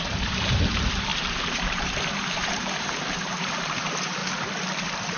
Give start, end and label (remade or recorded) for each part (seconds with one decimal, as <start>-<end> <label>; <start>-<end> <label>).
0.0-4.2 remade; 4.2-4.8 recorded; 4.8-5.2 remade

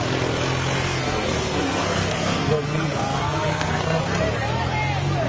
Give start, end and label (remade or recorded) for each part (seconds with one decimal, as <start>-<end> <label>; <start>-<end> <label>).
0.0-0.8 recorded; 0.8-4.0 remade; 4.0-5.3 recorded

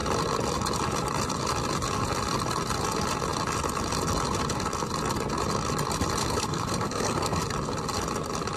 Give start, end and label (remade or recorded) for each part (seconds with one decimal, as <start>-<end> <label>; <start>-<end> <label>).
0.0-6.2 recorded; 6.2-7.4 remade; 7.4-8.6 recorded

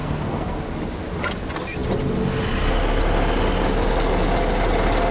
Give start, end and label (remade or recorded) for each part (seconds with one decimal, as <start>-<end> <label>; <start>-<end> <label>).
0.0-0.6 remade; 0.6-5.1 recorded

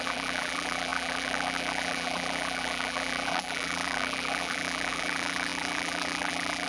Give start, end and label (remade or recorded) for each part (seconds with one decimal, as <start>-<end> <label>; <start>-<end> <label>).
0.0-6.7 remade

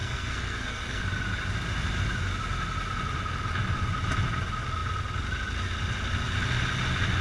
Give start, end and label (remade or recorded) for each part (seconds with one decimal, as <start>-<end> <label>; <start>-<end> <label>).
0.0-1.0 remade; 1.0-7.2 recorded